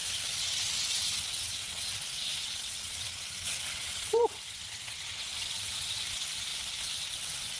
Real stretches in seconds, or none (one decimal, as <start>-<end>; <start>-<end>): none